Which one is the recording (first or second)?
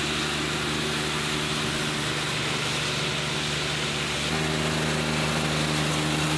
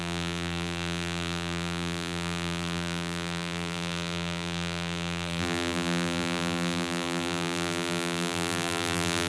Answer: first